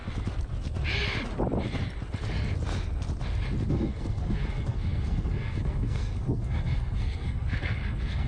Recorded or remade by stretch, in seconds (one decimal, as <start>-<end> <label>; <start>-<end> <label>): 0.0-3.7 recorded; 3.7-8.3 remade